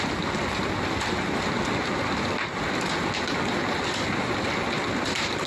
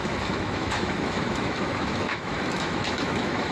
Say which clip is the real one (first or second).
first